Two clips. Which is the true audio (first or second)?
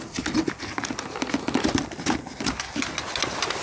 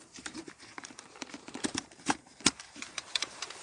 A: first